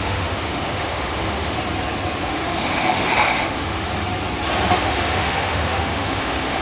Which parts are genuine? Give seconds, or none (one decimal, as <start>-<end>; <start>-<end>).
1.6-2.2; 3.9-4.8